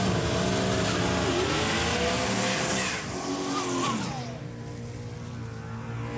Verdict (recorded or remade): recorded